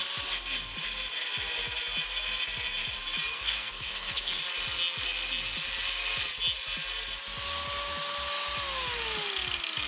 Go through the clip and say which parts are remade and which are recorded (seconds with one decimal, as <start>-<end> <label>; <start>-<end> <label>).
0.0-3.3 recorded; 3.3-4.4 remade; 4.4-9.9 recorded